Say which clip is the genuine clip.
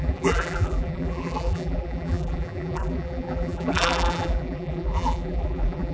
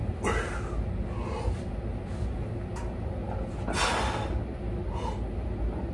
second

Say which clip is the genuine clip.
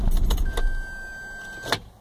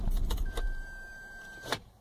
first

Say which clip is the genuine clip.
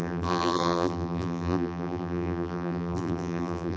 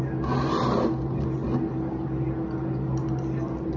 second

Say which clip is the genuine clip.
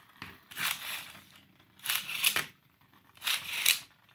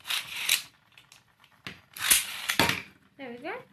second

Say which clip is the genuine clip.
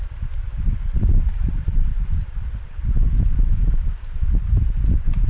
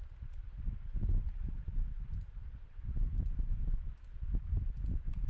second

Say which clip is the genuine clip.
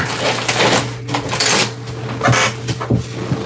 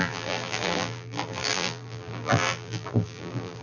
first